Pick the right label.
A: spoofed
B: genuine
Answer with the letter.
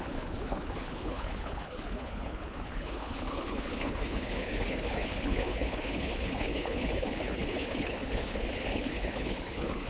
A